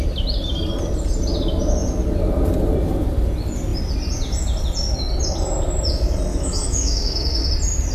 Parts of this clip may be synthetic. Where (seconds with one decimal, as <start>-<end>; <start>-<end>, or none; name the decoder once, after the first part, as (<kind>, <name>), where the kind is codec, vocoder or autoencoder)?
6.3-7.5 (autoencoder, DAC-VAE)